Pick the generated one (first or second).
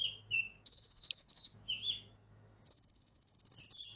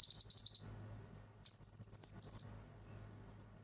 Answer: first